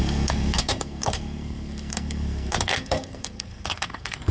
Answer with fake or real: fake